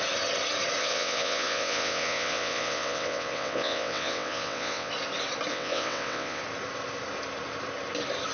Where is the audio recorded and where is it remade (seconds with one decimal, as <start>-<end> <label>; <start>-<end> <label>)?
0.0-0.8 recorded; 0.8-4.9 remade; 4.9-5.5 recorded; 5.5-6.4 remade; 6.4-8.3 recorded